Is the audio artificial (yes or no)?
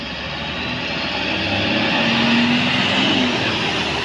no